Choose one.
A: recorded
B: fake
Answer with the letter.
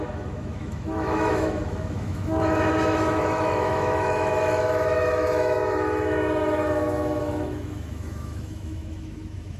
B